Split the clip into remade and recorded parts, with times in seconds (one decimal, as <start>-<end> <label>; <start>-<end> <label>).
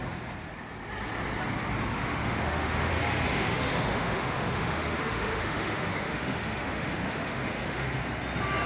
0.0-1.9 recorded; 1.9-2.9 remade; 2.9-3.3 recorded; 3.3-8.0 remade; 8.0-8.7 recorded